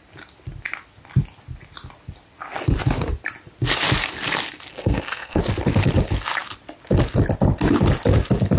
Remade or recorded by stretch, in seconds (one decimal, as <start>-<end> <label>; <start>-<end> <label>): 0.0-4.7 recorded; 4.7-5.4 remade; 5.4-8.6 recorded